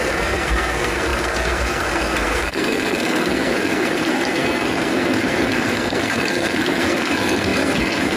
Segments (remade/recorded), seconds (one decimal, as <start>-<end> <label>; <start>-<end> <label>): 0.0-8.2 remade